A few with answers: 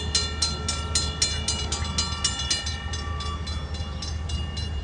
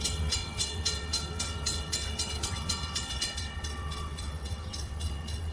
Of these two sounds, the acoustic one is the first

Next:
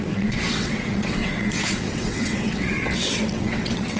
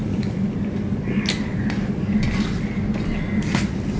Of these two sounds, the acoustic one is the second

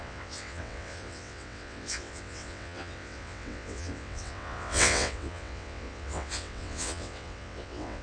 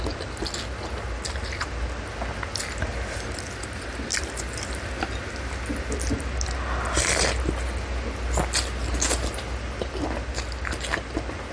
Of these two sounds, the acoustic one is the second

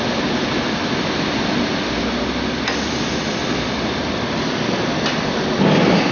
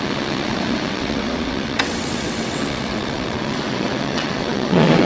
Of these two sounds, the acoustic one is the first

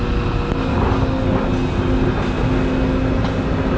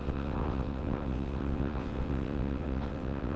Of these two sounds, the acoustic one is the first